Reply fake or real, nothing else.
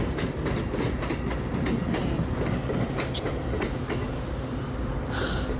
real